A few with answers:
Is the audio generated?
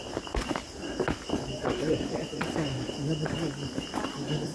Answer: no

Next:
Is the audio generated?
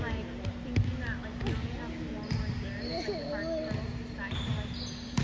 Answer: no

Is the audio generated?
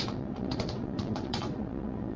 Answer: yes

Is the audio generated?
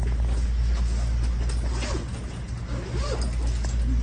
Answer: no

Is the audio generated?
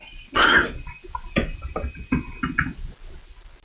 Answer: no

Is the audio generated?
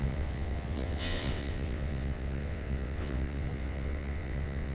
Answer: yes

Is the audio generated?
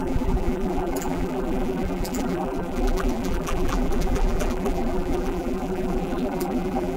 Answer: yes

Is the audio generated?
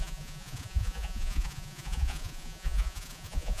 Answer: yes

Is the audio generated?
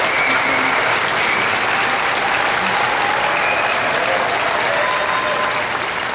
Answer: no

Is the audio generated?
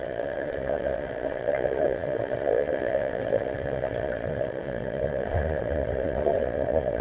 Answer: yes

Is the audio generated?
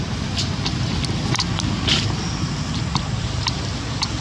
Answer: yes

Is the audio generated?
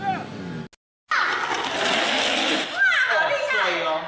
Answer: no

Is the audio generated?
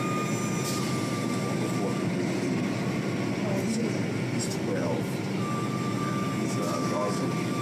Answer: no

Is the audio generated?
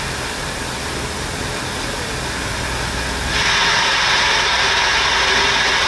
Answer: no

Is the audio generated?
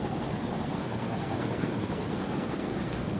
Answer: yes